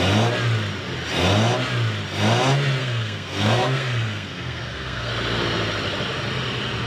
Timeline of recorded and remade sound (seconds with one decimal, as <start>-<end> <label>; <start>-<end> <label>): 0.0-2.8 recorded; 2.8-5.1 remade; 5.1-6.9 recorded